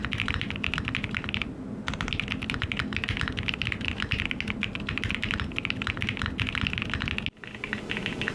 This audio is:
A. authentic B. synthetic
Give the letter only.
A